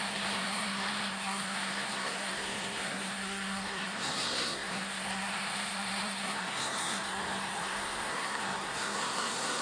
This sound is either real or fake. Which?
fake